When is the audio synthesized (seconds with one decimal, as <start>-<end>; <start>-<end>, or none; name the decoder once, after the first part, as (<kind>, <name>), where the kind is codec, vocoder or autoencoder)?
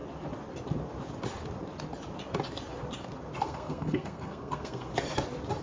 3.4-4.9 (codec, SNAC)